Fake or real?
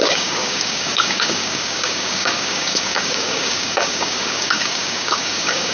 fake